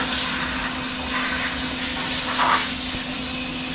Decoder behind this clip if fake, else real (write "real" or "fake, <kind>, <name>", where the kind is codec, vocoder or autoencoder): real